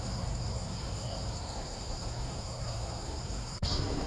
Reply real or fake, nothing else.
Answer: fake